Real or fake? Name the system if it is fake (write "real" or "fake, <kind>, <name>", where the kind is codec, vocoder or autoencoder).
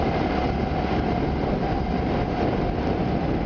real